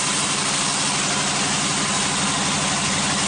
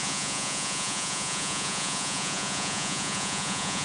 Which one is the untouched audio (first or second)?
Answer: first